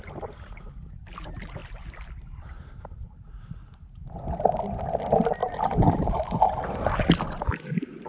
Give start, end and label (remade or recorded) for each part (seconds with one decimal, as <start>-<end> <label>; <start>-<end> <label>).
0.0-1.6 recorded; 1.6-2.8 remade; 2.8-5.4 recorded; 5.4-8.1 remade